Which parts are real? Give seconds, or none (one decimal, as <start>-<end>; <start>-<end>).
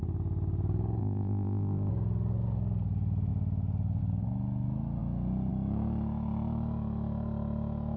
0.0-1.0; 1.9-8.0